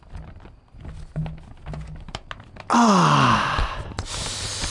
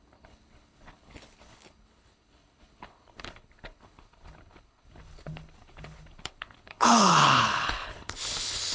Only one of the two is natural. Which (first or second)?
first